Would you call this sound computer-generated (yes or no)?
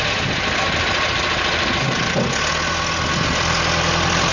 no